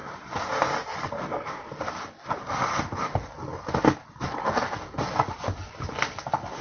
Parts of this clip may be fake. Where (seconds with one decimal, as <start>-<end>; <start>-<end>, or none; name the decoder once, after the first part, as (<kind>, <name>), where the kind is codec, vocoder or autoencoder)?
none